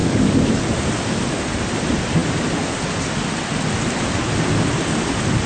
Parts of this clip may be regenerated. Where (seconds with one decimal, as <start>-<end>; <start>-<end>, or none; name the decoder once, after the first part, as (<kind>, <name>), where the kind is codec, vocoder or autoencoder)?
0.0-0.5 (codec, DAC)